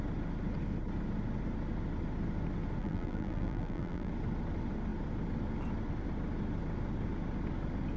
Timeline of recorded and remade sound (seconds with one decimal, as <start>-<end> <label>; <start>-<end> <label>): 0.0-2.8 recorded; 2.8-4.1 remade; 4.1-8.0 recorded